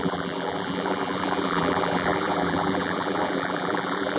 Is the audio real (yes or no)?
no